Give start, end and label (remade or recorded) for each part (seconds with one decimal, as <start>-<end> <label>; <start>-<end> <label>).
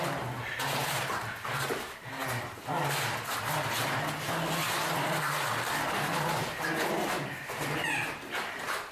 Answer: 0.0-8.9 recorded